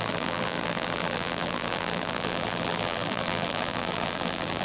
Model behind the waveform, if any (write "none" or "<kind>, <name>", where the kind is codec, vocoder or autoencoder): vocoder, BigVGAN v2